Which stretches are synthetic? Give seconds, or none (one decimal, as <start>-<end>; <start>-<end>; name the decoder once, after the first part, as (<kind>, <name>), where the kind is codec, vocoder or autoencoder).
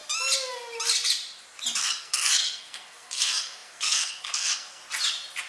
1.8-4.8 (codec, SNAC)